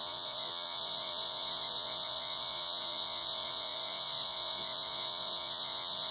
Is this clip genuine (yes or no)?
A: no